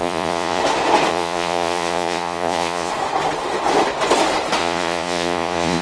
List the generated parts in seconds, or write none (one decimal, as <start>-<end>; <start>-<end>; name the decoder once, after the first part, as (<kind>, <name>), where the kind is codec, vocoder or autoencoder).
0.0-0.6 (vocoder, Vocos); 1.1-2.9; 4.6-5.8